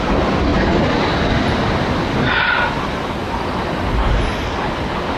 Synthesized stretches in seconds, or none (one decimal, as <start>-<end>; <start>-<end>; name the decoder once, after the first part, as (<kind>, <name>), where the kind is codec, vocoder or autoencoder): none